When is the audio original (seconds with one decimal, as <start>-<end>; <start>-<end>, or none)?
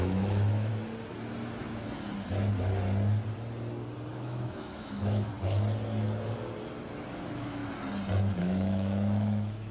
0.7-4.1; 5.3-7.1; 7.6-8.4